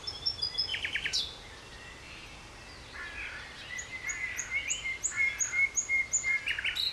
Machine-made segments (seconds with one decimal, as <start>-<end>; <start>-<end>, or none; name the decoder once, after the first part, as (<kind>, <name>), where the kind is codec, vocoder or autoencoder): 0.7-1.2 (vocoder, BigVGAN v2)